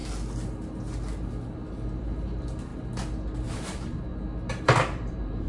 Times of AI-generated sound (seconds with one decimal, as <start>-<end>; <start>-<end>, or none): 2.0-2.7; 3.5-4.1; 4.6-5.5